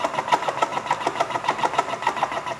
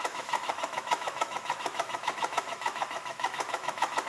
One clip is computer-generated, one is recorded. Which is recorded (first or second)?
first